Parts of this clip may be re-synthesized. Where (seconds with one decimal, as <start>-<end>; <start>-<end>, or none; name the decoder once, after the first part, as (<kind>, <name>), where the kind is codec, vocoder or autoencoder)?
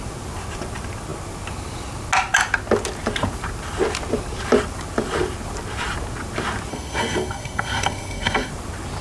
6.7-8.5 (codec, SNAC)